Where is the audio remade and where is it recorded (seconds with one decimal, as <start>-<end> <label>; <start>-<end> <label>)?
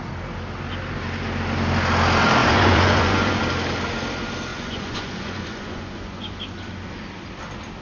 0.0-2.4 recorded; 2.4-3.4 remade; 3.4-4.5 recorded; 4.5-6.4 remade; 6.4-7.8 recorded